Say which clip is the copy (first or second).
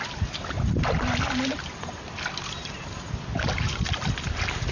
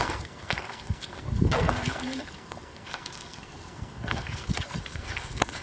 second